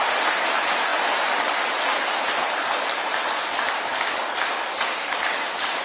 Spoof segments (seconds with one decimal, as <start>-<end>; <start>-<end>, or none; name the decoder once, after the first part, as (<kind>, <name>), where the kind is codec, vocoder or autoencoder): 0.0-0.9 (vocoder, BigVGAN v2); 2.2-5.8

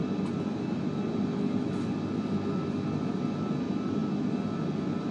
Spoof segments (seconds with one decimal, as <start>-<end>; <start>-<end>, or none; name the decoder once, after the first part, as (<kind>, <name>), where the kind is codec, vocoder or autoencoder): none